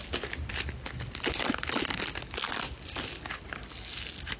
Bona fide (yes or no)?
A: yes